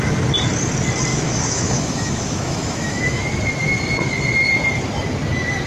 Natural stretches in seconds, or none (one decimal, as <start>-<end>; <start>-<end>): 0.0-1.1; 3.2-5.7